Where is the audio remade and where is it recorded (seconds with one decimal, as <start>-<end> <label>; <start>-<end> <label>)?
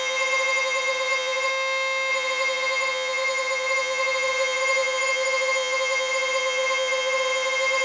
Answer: 0.0-1.5 remade; 1.5-2.1 recorded; 2.1-7.8 remade